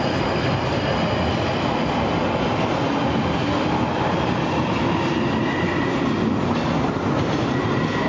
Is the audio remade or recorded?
recorded